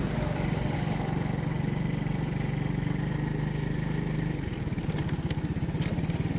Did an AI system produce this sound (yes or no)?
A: no